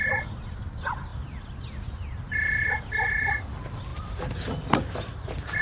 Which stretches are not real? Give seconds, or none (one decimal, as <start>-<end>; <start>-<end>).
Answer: none